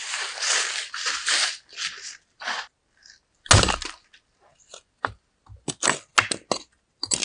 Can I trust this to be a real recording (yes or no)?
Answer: yes